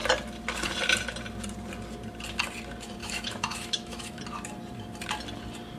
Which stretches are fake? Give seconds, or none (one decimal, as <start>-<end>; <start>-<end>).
3.0-4.2

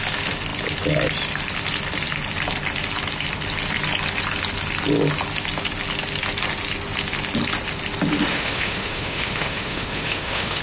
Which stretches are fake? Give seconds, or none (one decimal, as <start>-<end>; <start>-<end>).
8.3-10.6

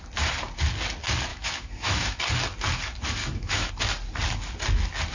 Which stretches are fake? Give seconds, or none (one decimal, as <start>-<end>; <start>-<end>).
1.3-2.2; 3.2-3.7

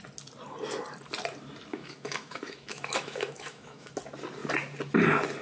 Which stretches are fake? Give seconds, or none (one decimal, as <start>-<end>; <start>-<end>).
1.7-3.9

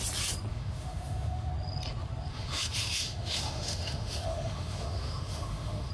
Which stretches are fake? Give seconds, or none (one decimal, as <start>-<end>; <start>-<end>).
0.5-1.5; 2.3-5.9

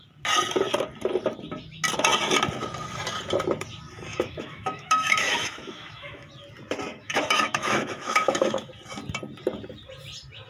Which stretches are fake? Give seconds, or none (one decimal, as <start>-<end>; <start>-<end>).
4.1-6.3; 6.9-8.7

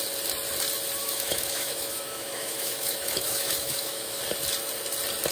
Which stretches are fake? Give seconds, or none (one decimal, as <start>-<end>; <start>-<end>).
1.0-4.2